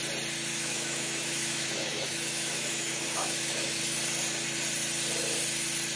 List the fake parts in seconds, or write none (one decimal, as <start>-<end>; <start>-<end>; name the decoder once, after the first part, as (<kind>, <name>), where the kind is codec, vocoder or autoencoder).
0.5-3.8 (autoencoder, DAC-VAE)